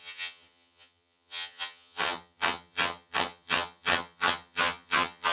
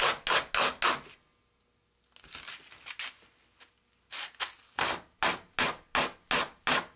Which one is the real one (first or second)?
second